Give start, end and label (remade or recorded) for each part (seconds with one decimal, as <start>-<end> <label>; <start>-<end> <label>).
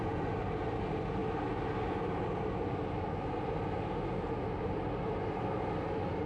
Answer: 0.0-6.3 recorded